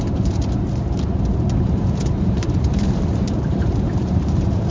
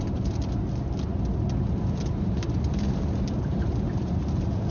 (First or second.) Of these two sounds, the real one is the second